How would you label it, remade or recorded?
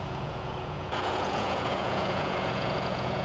remade